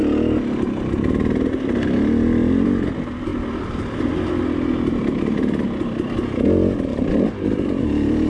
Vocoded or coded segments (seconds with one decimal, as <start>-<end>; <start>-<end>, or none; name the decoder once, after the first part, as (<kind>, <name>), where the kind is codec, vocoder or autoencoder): 2.9-3.3 (vocoder, BigVGAN v2); 4.7-8.3